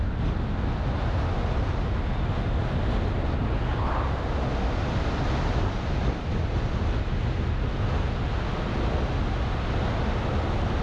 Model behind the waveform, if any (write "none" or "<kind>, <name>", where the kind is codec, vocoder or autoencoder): none